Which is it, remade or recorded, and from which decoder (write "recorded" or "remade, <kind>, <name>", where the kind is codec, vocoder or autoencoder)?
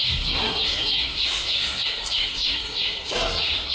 remade, codec, SNAC